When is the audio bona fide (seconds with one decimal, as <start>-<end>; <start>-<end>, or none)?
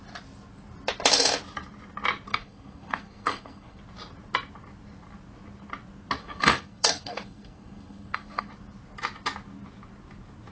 0.0-2.3; 3.8-6.2; 8.5-10.5